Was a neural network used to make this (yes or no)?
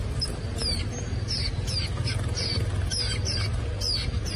no